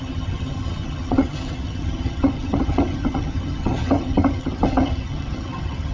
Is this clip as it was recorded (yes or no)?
no